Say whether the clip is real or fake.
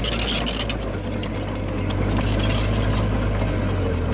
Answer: real